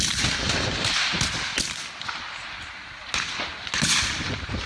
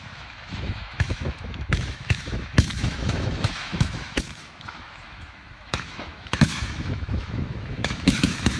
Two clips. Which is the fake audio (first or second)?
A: second